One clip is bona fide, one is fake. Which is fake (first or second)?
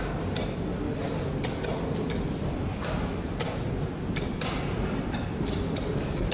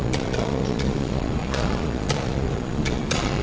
second